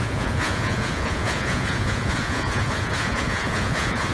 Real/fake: fake